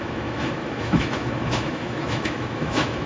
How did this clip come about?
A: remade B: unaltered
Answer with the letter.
A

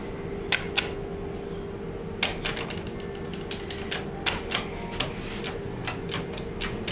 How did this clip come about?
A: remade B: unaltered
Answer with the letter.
B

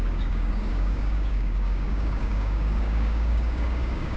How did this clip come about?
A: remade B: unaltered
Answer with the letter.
A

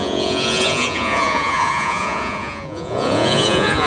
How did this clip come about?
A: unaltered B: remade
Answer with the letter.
B